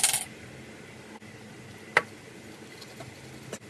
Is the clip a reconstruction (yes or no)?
no